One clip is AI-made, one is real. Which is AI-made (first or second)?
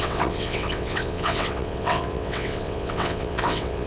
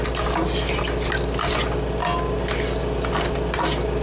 first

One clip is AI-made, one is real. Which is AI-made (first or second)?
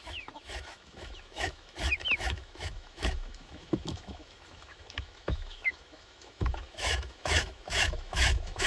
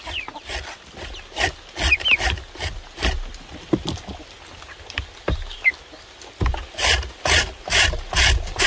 first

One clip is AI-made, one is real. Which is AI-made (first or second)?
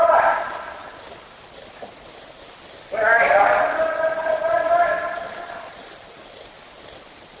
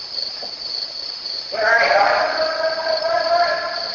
second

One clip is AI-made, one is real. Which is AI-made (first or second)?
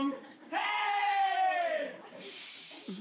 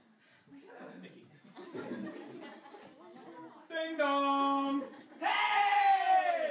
first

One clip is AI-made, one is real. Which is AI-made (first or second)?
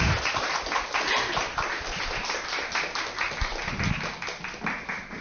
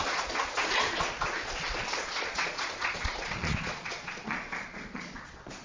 second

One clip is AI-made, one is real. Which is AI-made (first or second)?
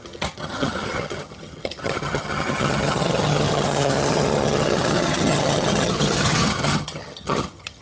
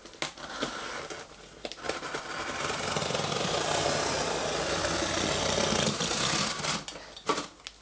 first